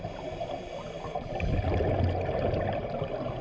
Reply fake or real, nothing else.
real